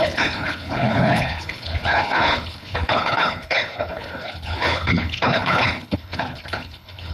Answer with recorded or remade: remade